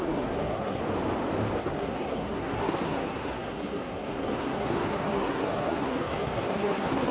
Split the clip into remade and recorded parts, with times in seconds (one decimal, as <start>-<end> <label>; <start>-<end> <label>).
0.0-0.8 remade; 0.8-1.6 recorded; 1.6-7.1 remade

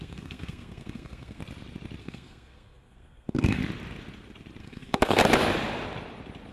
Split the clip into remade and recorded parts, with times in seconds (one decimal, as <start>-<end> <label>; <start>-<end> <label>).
0.0-1.4 remade; 1.4-2.0 recorded; 2.0-3.6 remade; 3.6-4.6 recorded; 4.6-5.2 remade; 5.2-6.5 recorded

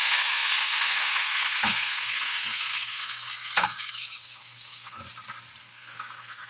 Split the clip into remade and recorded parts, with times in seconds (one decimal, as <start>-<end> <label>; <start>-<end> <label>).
0.0-5.0 remade; 5.0-5.6 recorded; 5.6-6.5 remade

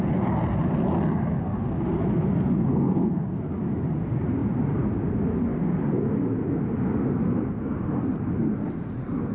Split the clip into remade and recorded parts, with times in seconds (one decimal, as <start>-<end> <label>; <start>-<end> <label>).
0.0-2.7 recorded; 2.7-3.2 remade; 3.2-9.3 recorded

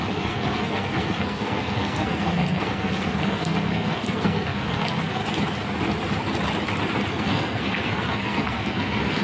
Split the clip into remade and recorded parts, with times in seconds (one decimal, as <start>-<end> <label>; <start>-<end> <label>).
0.0-5.2 remade; 5.2-7.1 recorded; 7.1-9.2 remade

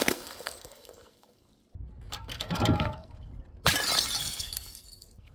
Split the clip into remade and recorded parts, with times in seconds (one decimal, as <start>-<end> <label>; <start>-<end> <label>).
0.0-1.5 remade; 1.5-2.1 recorded; 2.1-3.3 remade; 3.3-4.2 recorded; 4.2-5.3 remade